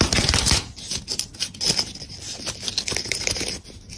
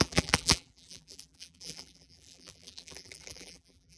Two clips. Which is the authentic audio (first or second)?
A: first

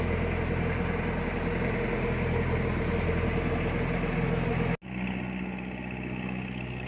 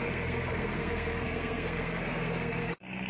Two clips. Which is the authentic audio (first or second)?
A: first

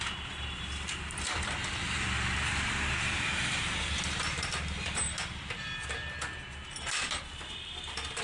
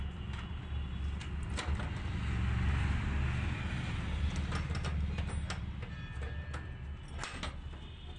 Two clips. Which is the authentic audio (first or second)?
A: second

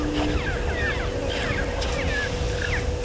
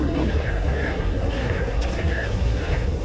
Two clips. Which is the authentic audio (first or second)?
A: first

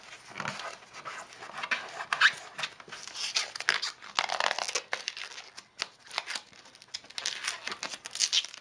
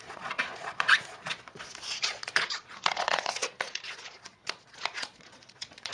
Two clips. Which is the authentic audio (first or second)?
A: first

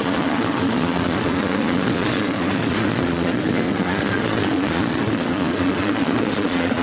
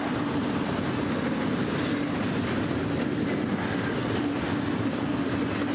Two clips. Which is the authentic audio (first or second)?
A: second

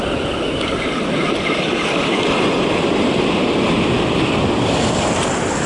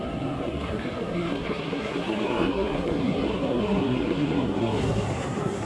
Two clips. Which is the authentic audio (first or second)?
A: first